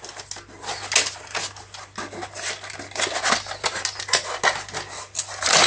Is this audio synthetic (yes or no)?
no